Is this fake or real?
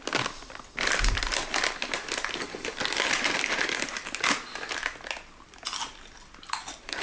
real